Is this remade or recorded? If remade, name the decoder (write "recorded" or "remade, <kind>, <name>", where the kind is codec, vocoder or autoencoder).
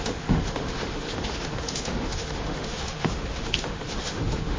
remade, autoencoder, DAC-VAE